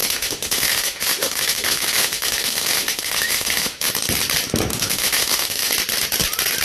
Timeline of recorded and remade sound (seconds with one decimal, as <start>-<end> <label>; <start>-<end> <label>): 0.0-3.9 remade; 3.9-4.7 recorded; 4.7-5.7 remade; 5.7-6.6 recorded